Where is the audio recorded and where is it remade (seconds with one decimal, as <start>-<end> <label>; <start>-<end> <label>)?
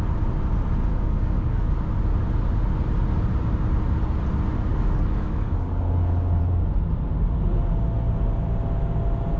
0.0-0.9 recorded; 0.9-1.8 remade; 1.8-4.7 recorded; 4.7-6.4 remade; 6.4-9.4 recorded